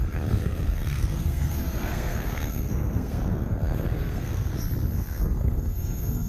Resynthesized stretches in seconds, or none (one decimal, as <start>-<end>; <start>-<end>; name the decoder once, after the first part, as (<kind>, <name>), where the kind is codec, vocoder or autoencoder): 0.0-4.5 (codec, SNAC); 5.0-6.3